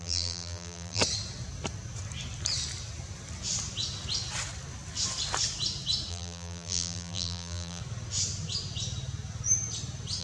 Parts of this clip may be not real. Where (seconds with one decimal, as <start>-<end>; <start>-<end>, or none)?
0.0-1.0; 6.1-7.8